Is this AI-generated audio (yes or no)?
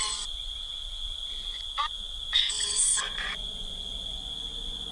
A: yes